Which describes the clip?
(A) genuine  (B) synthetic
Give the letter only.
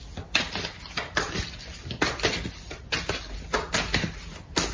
A